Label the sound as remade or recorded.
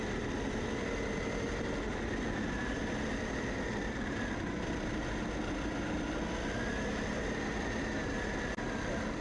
recorded